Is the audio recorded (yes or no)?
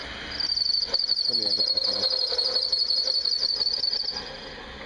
yes